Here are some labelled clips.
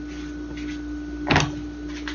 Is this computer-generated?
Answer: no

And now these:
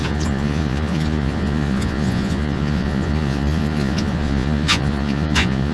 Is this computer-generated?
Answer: yes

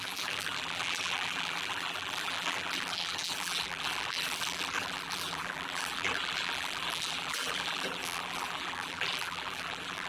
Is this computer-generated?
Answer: yes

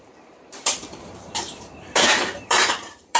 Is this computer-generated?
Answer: yes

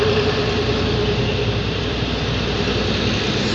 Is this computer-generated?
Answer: no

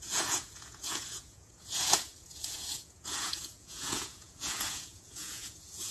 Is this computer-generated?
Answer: yes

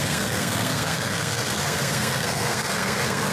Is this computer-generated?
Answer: yes